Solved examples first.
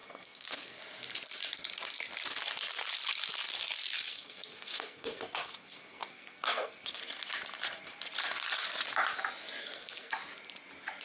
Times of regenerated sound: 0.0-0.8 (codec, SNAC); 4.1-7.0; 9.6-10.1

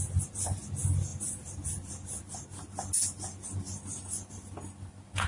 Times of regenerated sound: none